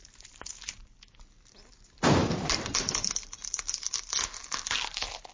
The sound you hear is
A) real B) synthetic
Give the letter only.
A